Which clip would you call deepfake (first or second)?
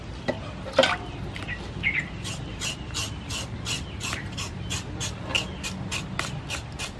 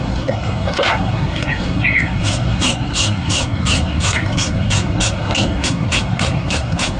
second